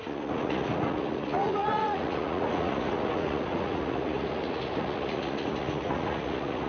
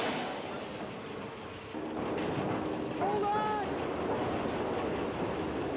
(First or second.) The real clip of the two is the second